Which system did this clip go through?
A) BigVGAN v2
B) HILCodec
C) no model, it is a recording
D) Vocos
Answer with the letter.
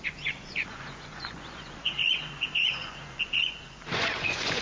D